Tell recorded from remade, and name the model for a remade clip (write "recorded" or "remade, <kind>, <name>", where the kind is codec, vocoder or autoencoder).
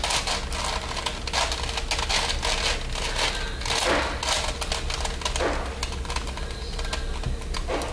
recorded